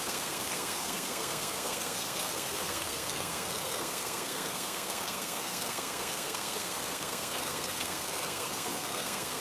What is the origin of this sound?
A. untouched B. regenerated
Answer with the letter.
B